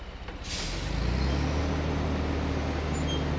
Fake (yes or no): no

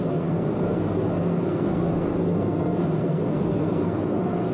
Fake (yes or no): yes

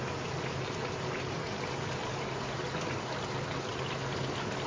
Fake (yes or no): no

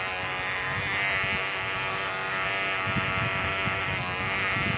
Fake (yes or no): no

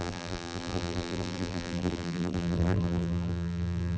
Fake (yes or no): yes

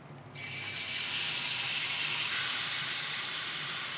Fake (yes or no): no